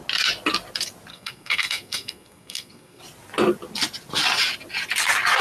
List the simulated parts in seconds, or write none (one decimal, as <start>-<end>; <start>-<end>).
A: 1.1-3.0